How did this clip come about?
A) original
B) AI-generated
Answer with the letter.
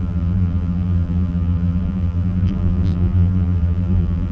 B